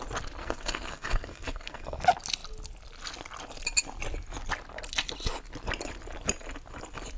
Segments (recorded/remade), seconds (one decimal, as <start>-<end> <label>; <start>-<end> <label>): 0.0-0.4 recorded; 0.4-2.0 remade; 2.0-7.2 recorded

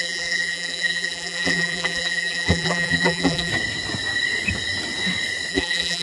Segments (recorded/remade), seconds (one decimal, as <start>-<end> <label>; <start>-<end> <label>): 0.0-3.5 remade; 3.5-5.5 recorded; 5.5-6.0 remade

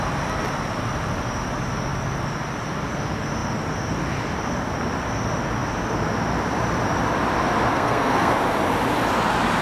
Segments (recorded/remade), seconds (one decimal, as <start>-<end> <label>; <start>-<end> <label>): 0.0-7.7 recorded; 7.7-8.3 remade; 8.3-9.6 recorded

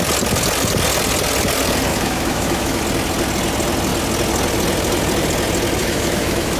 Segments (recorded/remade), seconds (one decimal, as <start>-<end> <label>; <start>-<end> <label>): 0.0-1.9 recorded; 1.9-2.8 remade; 2.8-5.8 recorded; 5.8-6.6 remade

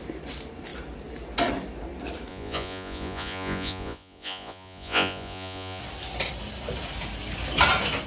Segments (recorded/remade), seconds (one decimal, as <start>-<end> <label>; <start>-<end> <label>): 0.0-2.3 recorded; 2.3-5.8 remade; 5.8-8.1 recorded

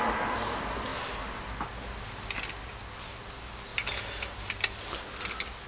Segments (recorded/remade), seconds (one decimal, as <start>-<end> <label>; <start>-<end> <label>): 0.0-5.7 recorded

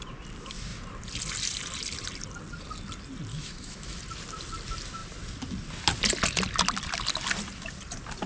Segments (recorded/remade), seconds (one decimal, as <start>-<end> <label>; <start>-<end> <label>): 0.0-3.3 recorded; 3.3-4.0 remade; 4.0-8.3 recorded